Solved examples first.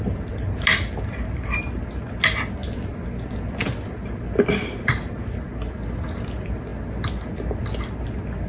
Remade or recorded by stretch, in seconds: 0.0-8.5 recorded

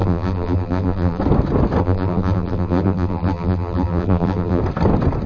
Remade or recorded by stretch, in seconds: 0.0-1.2 remade; 1.2-1.8 recorded; 1.8-4.6 remade; 4.6-5.3 recorded

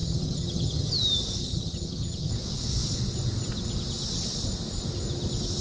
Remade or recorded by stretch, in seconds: 0.0-0.9 remade; 0.9-1.4 recorded; 1.4-2.3 remade; 2.3-5.6 recorded